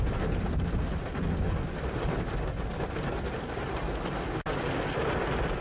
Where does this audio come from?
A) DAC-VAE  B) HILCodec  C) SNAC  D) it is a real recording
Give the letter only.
D